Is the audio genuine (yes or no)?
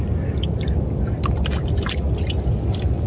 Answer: yes